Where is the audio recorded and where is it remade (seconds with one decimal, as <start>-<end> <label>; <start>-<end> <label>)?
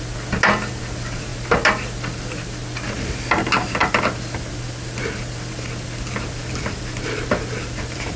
0.0-3.8 recorded; 3.8-4.5 remade; 4.5-6.4 recorded; 6.4-8.2 remade